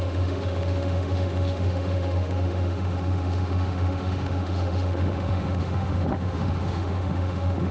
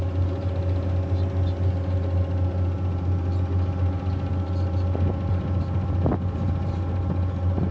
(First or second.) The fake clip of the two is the first